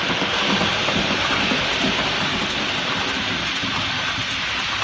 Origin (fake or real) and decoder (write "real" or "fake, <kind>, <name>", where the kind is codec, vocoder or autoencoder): real